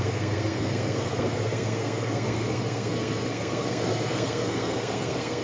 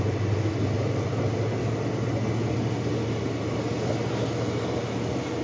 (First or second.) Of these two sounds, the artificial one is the first